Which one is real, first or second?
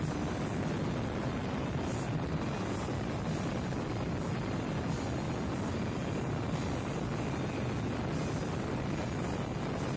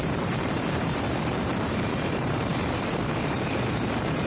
first